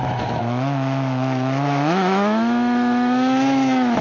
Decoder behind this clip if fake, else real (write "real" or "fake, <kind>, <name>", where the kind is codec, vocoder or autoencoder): fake, autoencoder, DAC-VAE